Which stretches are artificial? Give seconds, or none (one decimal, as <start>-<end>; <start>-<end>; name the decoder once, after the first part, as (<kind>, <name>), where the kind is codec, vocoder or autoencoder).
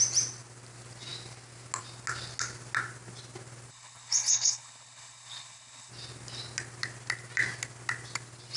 3.7-5.9 (codec, HILCodec)